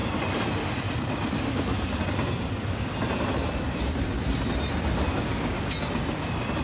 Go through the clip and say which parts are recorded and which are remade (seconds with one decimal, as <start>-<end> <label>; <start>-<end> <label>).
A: 0.0-5.1 recorded; 5.1-5.7 remade; 5.7-6.6 recorded